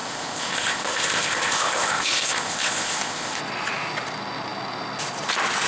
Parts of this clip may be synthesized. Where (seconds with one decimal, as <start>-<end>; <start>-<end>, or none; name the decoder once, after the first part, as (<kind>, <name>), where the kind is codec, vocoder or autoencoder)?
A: 0.0-3.4 (codec, ZipCodec)